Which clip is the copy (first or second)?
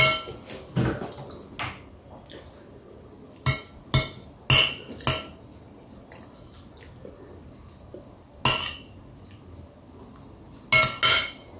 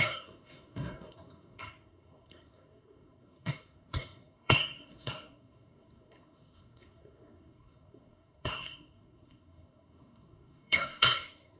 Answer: second